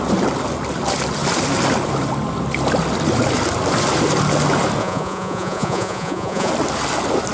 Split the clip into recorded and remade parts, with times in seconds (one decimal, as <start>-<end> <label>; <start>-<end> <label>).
0.0-4.8 recorded; 4.8-6.5 remade; 6.5-7.3 recorded